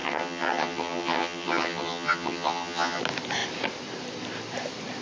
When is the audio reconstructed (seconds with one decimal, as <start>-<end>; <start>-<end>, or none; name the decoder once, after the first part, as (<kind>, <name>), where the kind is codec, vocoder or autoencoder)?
0.0-3.0 (vocoder, HiFi-GAN)